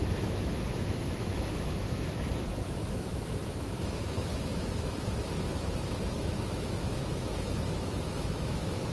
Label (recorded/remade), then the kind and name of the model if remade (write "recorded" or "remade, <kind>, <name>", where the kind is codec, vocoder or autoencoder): remade, autoencoder, DAC-VAE